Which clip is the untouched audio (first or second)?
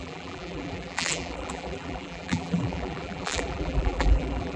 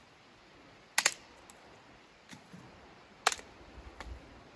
second